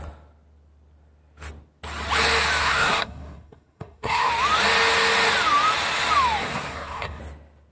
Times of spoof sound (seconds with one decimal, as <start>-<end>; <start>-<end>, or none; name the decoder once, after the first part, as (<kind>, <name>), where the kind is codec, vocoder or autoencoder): 2.6-4.3 (codec, SNAC); 6.4-7.2